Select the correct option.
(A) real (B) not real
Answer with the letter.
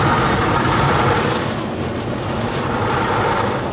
A